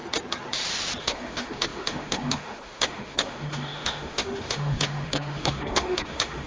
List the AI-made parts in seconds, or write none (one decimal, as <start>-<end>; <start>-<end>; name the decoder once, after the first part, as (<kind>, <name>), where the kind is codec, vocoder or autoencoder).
1.0-6.5 (autoencoder, DAC-VAE)